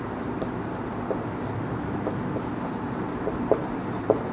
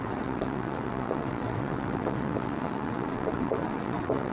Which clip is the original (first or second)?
first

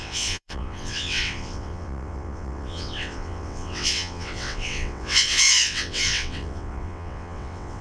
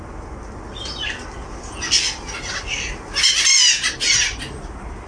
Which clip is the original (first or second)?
second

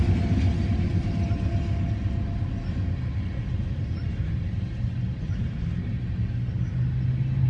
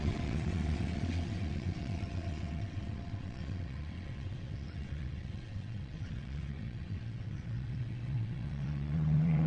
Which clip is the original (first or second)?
first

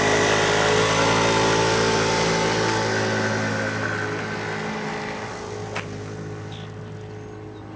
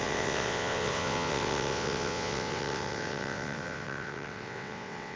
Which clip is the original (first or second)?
first